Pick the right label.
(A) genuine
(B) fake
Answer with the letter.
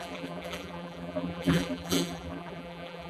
B